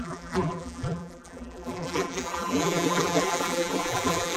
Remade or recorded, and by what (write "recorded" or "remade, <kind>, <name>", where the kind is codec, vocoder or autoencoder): remade, vocoder, BigVGAN v2